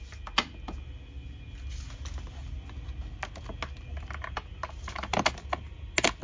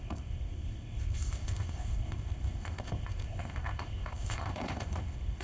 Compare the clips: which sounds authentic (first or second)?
first